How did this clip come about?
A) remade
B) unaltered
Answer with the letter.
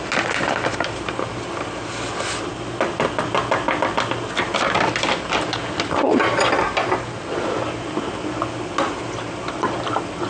B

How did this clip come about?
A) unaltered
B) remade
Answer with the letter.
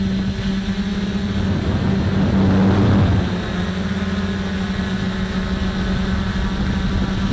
A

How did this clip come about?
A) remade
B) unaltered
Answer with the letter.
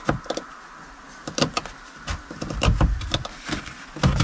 B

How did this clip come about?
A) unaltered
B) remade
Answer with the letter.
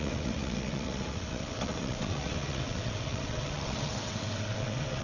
B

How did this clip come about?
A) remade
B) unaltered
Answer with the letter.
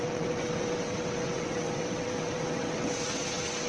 A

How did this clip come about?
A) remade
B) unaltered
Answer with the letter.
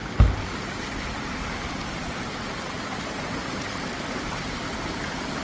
B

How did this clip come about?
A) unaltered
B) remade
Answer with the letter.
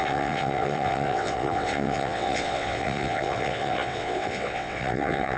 B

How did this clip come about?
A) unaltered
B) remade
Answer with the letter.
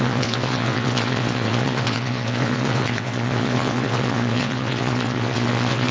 B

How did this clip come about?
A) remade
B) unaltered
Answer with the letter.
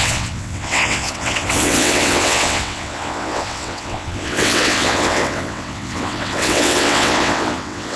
A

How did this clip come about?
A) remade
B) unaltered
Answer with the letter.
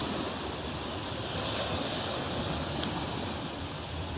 B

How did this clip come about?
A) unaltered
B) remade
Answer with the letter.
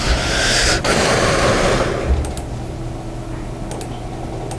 A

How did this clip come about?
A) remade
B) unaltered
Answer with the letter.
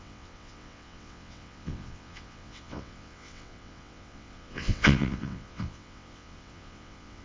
A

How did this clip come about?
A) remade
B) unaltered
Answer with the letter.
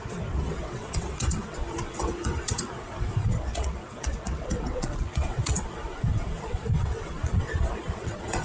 A